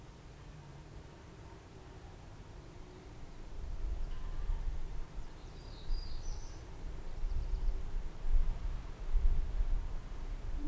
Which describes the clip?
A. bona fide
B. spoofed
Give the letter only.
B